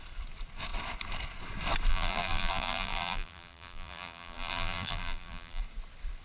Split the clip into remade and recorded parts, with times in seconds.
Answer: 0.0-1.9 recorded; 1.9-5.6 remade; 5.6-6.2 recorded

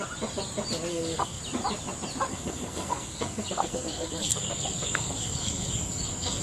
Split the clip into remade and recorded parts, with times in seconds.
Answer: 0.0-0.9 recorded; 0.9-1.4 remade; 1.4-2.3 recorded; 2.3-6.4 remade

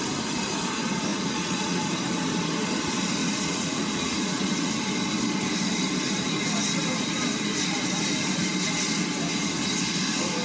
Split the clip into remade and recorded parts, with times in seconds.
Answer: 0.0-1.1 recorded; 1.1-1.8 remade; 1.8-3.2 recorded; 3.2-4.7 remade; 4.7-10.4 recorded

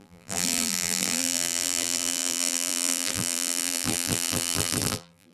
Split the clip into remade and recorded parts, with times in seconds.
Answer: 0.0-5.3 remade

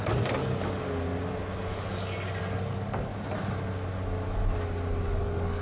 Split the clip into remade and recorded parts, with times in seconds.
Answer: 0.0-0.4 remade; 0.4-2.7 recorded; 2.7-3.1 remade; 3.1-5.0 recorded; 5.0-5.6 remade